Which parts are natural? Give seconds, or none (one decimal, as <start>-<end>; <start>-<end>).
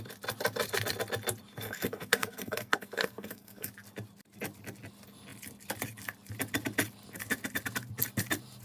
0.0-1.5; 3.7-8.6